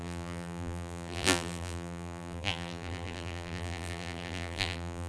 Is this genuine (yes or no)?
no